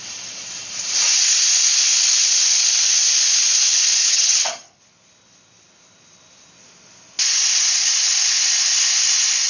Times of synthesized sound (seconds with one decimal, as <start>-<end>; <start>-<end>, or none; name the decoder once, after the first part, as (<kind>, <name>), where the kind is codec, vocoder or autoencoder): 4.0-4.8 (vocoder, HiFi-GAN)